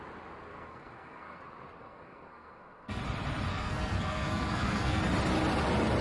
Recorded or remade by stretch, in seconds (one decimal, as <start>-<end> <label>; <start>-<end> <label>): 0.0-0.5 recorded; 0.5-1.4 remade; 1.4-1.8 recorded; 1.8-3.0 remade; 3.0-3.5 recorded; 3.5-5.0 remade; 5.0-6.0 recorded